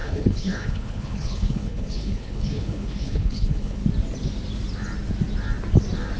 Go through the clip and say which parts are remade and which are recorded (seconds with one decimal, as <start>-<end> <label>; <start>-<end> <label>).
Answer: 0.0-3.8 remade; 3.8-6.2 recorded